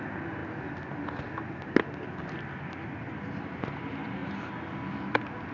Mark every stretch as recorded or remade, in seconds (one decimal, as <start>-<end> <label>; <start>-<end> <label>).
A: 0.0-5.5 recorded